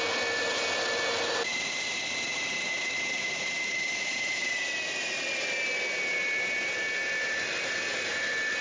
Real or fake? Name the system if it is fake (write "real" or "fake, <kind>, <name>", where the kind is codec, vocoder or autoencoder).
real